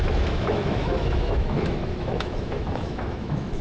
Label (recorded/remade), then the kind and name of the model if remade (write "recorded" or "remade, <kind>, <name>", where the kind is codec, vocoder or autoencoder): remade, autoencoder, DAC-VAE